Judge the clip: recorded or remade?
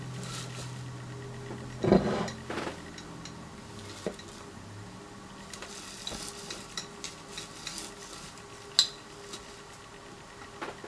recorded